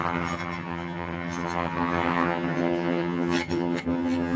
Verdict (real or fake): fake